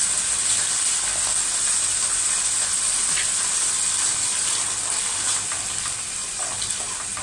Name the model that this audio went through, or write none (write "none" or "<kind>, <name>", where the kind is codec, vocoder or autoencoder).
none